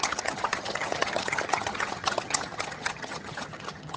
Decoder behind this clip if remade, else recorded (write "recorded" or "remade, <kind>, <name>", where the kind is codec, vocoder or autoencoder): remade, vocoder, HiFi-GAN